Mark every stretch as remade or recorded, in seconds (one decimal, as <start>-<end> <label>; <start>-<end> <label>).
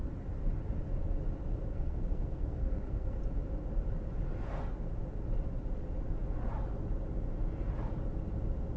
0.0-1.7 recorded; 1.7-3.2 remade; 3.2-8.8 recorded